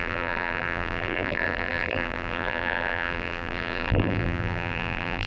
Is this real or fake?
fake